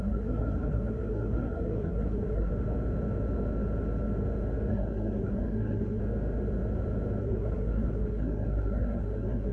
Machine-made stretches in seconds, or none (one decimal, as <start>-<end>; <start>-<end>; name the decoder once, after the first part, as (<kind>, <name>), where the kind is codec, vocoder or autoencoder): 0.0-2.5 (codec, SNAC); 4.7-6.0; 7.2-9.5